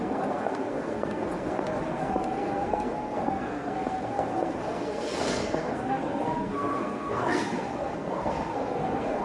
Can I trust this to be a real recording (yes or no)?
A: no